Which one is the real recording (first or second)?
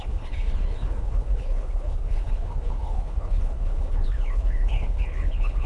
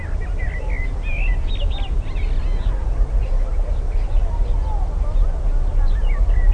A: second